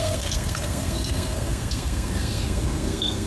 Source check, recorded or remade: remade